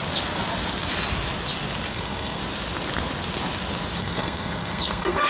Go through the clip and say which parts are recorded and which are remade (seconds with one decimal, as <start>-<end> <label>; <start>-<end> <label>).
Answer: 0.0-1.9 recorded; 1.9-2.4 remade; 2.4-4.0 recorded; 4.0-5.3 remade